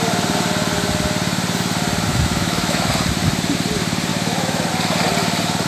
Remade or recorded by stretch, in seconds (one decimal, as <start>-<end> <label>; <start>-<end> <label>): 0.0-2.1 recorded; 2.1-2.9 remade; 2.9-4.1 recorded; 4.1-4.7 remade; 4.7-5.7 recorded